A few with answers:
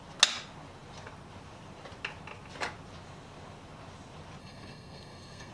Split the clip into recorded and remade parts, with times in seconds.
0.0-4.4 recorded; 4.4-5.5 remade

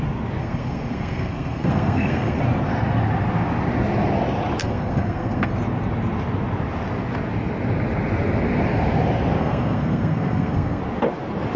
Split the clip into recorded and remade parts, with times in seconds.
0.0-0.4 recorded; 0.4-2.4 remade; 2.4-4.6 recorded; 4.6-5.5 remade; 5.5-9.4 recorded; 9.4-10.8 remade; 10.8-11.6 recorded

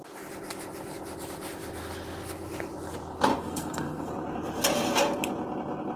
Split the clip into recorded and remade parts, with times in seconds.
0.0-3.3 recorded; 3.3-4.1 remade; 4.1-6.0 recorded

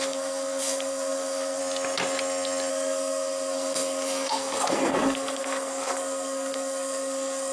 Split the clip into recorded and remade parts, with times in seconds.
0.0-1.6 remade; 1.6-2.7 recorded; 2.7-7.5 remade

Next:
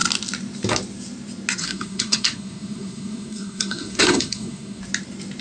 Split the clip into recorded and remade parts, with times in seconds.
0.0-1.6 recorded; 1.6-4.8 remade; 4.8-5.4 recorded

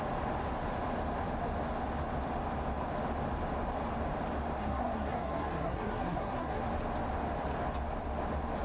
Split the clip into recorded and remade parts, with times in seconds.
0.0-4.6 recorded; 4.6-6.7 remade; 6.7-8.6 recorded

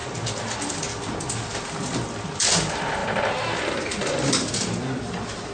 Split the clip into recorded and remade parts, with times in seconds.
0.0-5.5 recorded